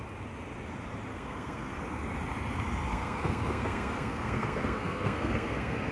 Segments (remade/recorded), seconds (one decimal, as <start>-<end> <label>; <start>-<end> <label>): 0.0-1.1 recorded; 1.1-1.8 remade; 1.8-2.9 recorded; 2.9-5.9 remade